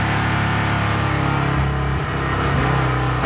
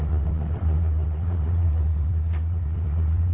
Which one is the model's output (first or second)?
second